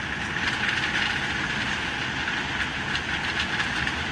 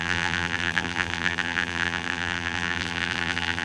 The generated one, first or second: second